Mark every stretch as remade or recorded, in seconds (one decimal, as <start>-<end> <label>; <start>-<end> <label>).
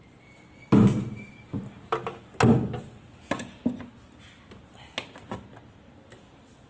0.0-6.7 recorded